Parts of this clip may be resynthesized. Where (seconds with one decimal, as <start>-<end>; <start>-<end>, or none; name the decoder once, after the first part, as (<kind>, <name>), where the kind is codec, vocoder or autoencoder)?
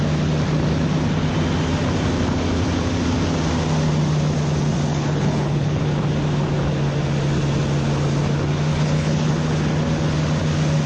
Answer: 4.9-5.8 (codec, HILCodec); 8.7-9.3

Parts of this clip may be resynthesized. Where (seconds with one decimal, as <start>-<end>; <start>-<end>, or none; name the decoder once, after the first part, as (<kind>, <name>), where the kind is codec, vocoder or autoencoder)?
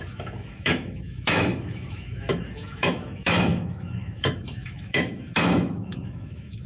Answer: 0.0-6.7 (autoencoder, DAC-VAE)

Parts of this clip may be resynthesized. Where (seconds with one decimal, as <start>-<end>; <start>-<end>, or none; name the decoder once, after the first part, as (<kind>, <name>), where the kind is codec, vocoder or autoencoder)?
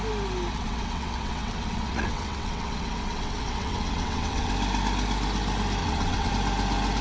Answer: 0.5-4.5 (vocoder, WaveNeXt); 5.8-6.3